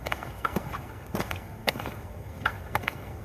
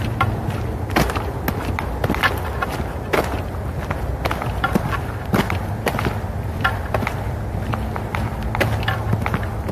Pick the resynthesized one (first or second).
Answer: first